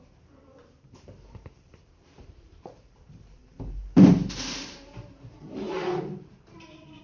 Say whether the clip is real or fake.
fake